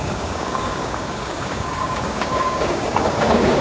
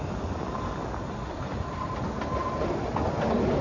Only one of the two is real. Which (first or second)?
second